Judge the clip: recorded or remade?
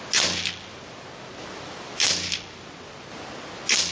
recorded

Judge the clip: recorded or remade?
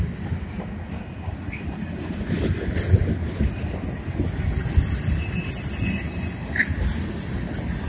recorded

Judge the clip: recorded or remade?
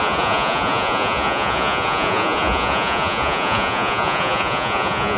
remade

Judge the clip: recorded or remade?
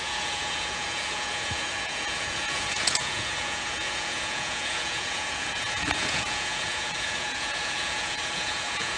remade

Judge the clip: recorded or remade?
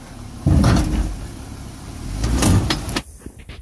recorded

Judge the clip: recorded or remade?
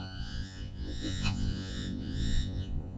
remade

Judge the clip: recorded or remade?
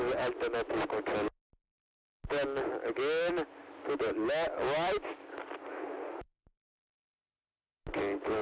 recorded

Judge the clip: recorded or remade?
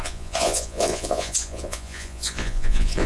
remade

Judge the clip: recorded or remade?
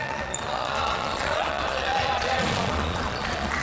remade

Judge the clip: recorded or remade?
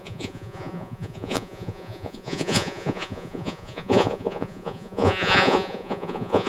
remade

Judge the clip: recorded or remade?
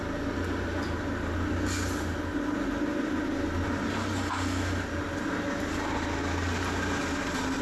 recorded